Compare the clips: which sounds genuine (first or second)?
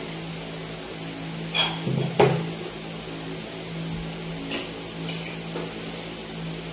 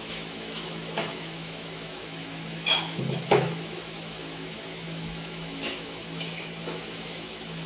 first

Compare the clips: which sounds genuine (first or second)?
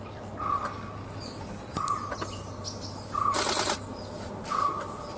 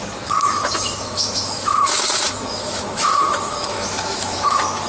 first